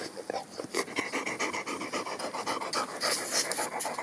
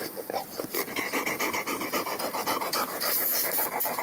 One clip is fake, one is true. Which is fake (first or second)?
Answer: second